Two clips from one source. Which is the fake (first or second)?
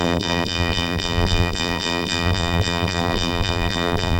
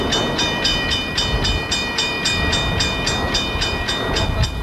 first